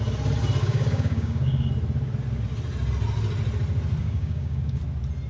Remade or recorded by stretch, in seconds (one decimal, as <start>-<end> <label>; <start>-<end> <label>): 0.0-0.6 recorded; 0.6-1.7 remade; 1.7-4.0 recorded; 4.0-4.8 remade; 4.8-5.3 recorded